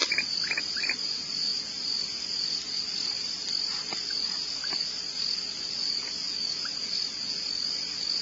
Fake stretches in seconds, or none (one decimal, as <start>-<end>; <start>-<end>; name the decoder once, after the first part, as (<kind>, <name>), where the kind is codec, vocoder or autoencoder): none